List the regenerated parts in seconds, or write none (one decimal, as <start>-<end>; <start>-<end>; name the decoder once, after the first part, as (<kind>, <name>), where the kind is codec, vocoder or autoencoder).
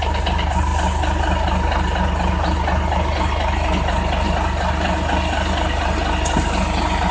none